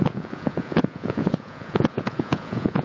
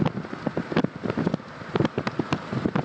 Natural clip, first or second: second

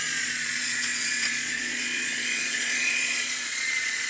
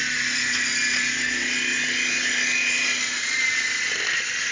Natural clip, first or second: second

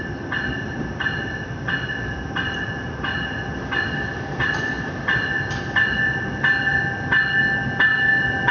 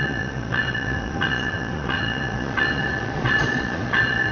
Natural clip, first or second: first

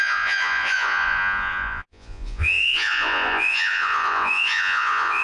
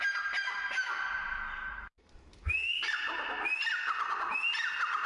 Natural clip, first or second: second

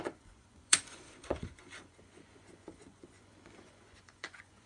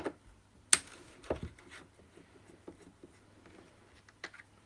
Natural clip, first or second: second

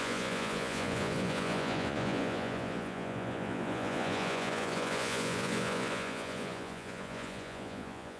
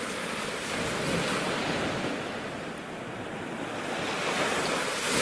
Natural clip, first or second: second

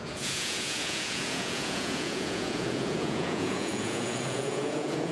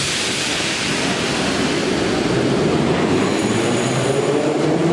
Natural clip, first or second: second